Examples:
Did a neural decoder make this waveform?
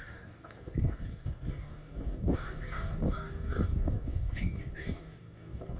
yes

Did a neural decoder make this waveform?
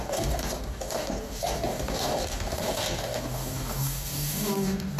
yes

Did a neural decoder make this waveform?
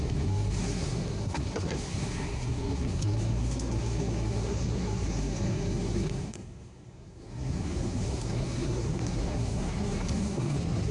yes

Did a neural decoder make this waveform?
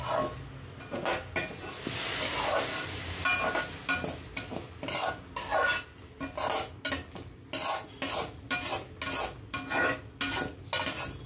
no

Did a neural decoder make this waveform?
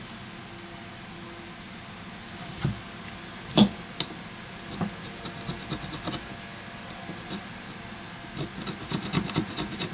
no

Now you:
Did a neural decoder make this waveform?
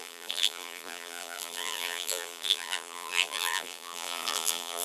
yes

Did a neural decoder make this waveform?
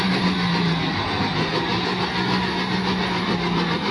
no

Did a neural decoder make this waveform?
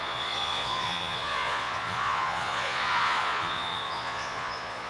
yes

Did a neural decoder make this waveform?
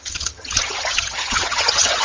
yes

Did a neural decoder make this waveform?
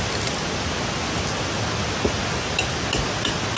no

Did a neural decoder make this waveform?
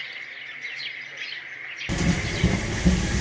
no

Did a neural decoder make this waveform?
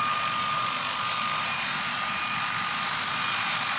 no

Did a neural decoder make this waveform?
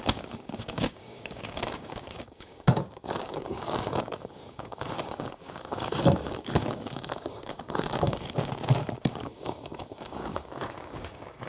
yes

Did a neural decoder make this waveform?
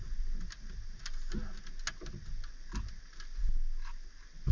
no